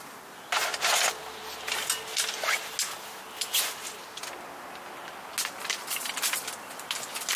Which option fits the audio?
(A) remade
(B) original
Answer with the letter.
B